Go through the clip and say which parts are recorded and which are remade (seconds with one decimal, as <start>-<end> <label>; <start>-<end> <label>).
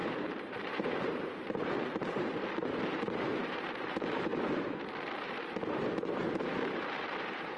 0.0-4.3 remade; 4.3-6.4 recorded; 6.4-7.6 remade